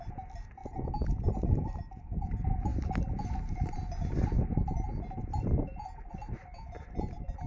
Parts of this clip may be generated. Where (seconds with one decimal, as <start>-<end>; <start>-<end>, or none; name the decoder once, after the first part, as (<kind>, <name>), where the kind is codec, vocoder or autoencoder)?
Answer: none